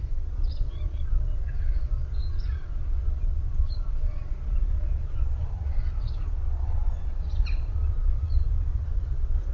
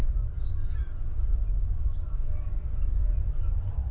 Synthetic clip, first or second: first